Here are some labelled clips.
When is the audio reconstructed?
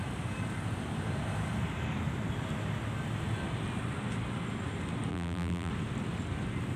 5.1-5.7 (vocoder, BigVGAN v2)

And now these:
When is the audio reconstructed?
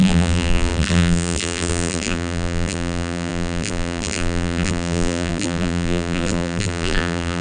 0.0-7.4 (vocoder, BigVGAN v2)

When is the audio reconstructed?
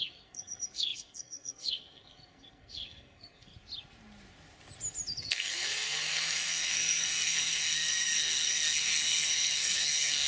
0.0-3.5 (codec, SNAC); 5.2-10.3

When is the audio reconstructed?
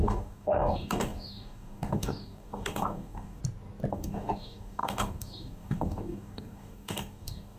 0.0-3.4 (codec, DAC); 3.9-7.6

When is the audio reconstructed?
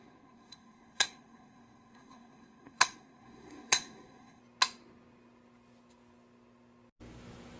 0.0-4.4 (codec, SNAC)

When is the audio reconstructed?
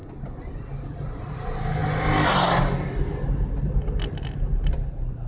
none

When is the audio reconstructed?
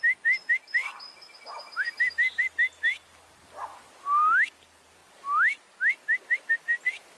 none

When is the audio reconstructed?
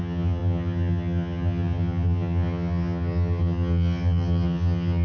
0.0-5.0 (vocoder, HiFi-GAN)